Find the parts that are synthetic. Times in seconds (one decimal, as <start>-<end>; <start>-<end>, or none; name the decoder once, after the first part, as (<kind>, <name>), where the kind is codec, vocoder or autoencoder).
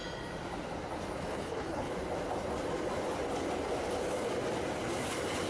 1.3-1.9 (codec, HILCodec)